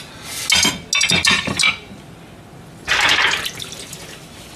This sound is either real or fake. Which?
real